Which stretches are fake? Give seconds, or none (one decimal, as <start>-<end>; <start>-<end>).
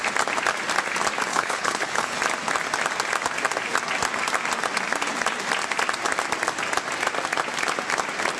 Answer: 1.3-2.2